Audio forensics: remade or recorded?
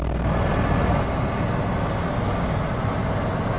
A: recorded